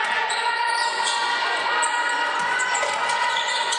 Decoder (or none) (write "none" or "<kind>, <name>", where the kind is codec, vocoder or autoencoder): vocoder, Vocos